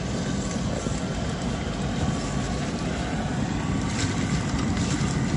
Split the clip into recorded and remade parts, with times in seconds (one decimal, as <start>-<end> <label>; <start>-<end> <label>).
0.0-5.4 recorded